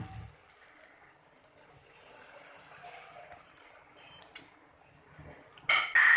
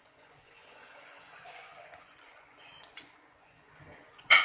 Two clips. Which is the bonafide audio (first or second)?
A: first